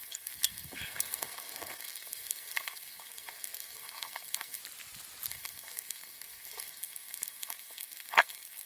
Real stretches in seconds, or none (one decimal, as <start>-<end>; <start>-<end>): 4.6-5.3